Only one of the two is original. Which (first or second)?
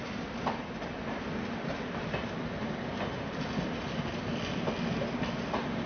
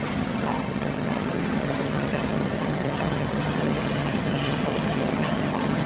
first